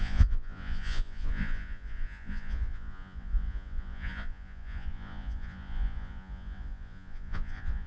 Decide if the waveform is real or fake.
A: fake